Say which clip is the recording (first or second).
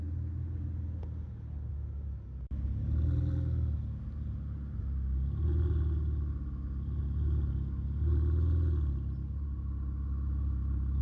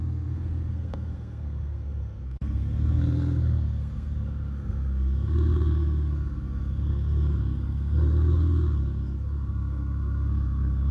first